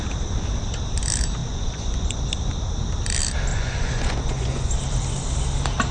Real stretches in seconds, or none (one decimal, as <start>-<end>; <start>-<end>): 0.0-1.4; 2.2-3.5; 4.7-5.9